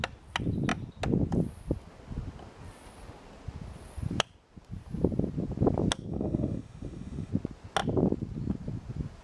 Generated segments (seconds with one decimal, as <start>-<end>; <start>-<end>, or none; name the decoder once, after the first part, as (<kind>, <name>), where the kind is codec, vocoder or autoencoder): 6.1-7.3 (autoencoder, DAC-VAE)